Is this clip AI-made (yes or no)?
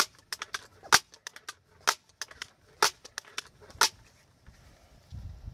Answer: no